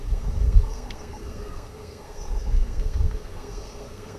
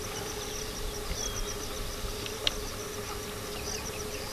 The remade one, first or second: first